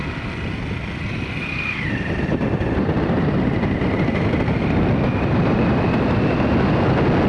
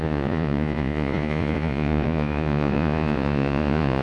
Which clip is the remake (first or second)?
second